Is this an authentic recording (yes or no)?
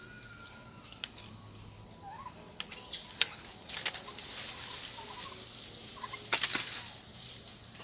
yes